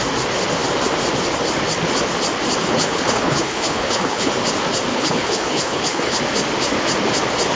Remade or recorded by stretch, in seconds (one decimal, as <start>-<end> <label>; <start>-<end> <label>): 0.0-2.6 recorded; 2.6-4.3 remade; 4.3-4.9 recorded; 4.9-6.2 remade; 6.2-7.5 recorded